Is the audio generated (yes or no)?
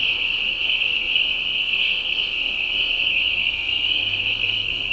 yes